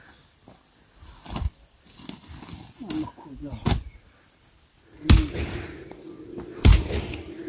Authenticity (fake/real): real